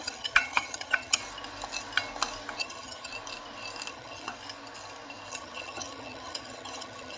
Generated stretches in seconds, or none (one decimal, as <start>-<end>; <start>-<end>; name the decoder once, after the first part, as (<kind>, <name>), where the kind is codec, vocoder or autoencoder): 0.0-1.2 (vocoder, HiFi-GAN); 2.6-3.1; 3.9-4.3; 5.3-7.2